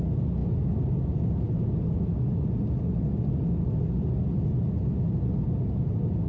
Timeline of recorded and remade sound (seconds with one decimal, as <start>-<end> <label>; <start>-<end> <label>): 0.0-6.3 recorded